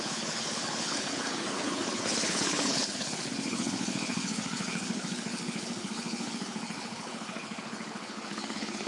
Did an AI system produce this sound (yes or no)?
yes